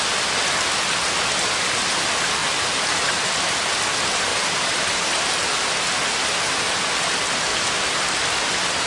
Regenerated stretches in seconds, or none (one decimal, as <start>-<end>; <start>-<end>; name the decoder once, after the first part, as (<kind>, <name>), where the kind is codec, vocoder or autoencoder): 2.4-3.3 (vocoder, BigVGAN v2); 4.3-5.2